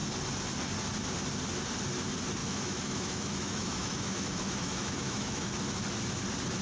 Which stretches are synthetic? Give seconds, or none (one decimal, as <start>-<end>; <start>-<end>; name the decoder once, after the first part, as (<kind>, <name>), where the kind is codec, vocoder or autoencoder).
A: 2.4-5.5 (autoencoder, DAC-VAE)